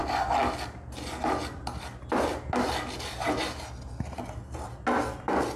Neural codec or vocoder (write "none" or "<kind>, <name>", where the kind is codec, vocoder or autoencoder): none